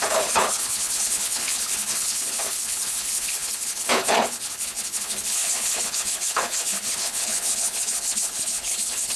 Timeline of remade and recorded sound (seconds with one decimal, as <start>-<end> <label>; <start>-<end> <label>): 0.0-9.2 remade